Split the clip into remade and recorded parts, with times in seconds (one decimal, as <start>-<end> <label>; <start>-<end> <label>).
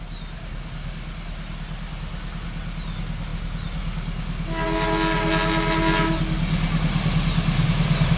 0.0-8.2 recorded